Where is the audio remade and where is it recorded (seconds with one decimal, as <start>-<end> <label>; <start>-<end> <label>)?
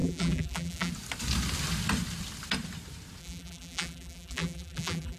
0.0-0.9 remade; 0.9-3.2 recorded; 3.2-5.2 remade